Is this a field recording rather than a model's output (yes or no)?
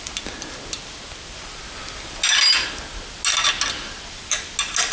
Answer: yes